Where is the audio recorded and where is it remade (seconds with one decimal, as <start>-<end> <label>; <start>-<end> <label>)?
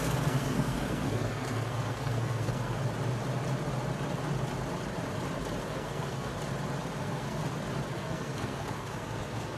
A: 0.0-2.8 remade; 2.8-5.6 recorded; 5.6-6.3 remade; 6.3-7.0 recorded; 7.0-7.4 remade; 7.4-7.9 recorded; 7.9-9.6 remade